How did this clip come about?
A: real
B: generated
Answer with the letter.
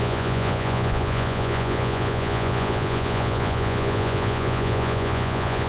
B